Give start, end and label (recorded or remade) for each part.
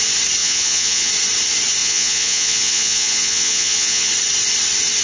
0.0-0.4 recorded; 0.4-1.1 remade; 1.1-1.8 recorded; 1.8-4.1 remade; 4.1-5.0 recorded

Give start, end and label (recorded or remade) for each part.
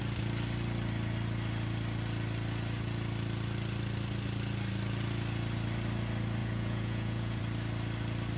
0.0-6.4 recorded; 6.4-7.4 remade; 7.4-8.4 recorded